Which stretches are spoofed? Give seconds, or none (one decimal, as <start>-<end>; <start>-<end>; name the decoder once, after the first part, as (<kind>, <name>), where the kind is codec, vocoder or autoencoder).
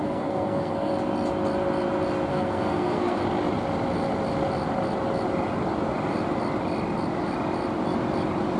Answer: 0.0-0.9 (codec, SNAC); 2.3-3.2